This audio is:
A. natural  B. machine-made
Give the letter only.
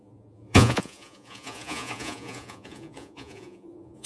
B